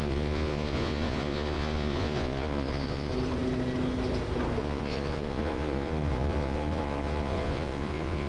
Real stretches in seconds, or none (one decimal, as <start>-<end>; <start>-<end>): 3.1-4.6